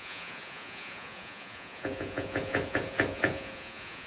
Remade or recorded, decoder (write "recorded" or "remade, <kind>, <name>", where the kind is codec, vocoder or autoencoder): remade, vocoder, Vocos